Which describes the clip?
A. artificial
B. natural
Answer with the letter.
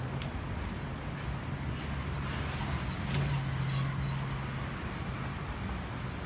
B